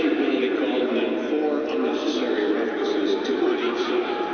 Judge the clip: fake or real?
real